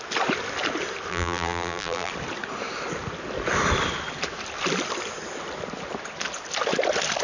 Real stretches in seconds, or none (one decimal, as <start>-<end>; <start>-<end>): 0.0-1.1; 2.1-7.2